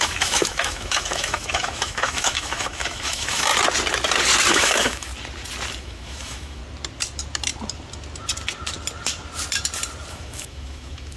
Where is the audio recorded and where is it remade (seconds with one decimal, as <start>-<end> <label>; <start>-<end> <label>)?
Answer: 0.0-3.5 remade; 3.5-4.5 recorded; 4.5-5.1 remade; 5.1-5.8 recorded; 5.8-6.6 remade; 6.6-10.1 recorded; 10.1-11.2 remade